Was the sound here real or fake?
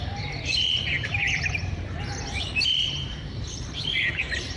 fake